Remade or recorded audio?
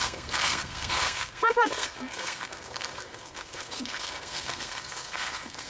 remade